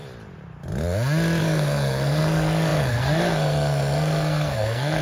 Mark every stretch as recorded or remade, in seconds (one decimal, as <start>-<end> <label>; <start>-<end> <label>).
0.0-1.4 recorded; 1.4-5.0 remade